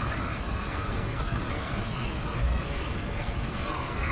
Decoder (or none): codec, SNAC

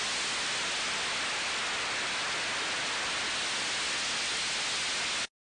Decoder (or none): none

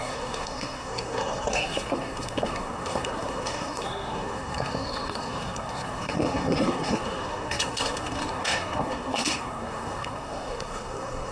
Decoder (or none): codec, SNAC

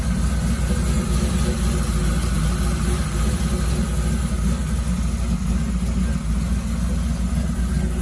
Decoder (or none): none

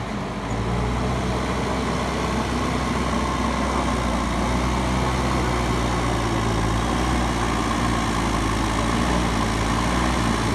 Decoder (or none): none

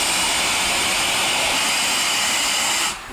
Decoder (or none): none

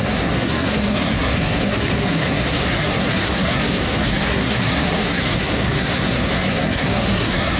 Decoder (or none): codec, SNAC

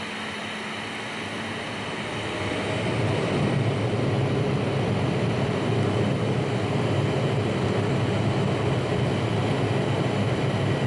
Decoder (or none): none